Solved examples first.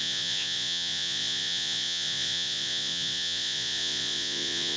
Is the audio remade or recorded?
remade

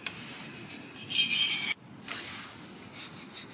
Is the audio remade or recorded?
recorded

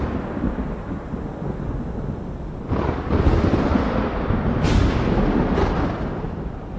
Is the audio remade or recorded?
recorded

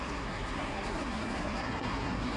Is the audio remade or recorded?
remade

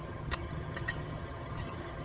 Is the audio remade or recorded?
remade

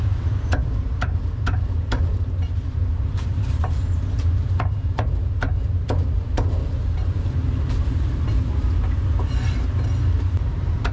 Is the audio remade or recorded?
remade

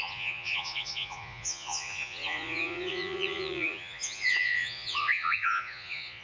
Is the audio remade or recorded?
remade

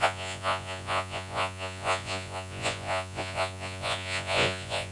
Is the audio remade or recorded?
remade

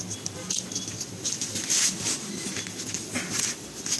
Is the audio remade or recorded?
recorded